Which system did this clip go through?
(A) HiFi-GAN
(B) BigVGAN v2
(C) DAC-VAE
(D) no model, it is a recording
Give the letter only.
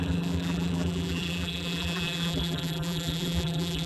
B